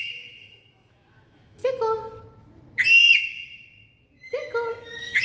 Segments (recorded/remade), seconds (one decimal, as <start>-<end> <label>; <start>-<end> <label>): 0.0-1.6 remade; 1.6-4.7 recorded; 4.7-5.2 remade